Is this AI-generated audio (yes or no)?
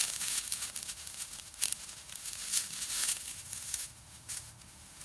yes